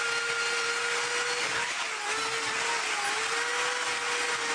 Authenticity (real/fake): real